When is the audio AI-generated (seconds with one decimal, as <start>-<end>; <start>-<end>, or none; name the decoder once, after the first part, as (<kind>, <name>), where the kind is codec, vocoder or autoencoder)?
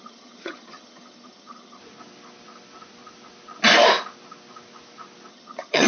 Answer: 0.0-1.8 (vocoder, HiFi-GAN); 5.3-5.9